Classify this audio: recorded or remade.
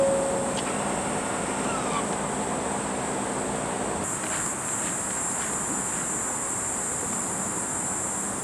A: recorded